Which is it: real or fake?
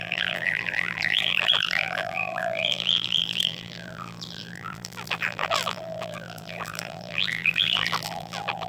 fake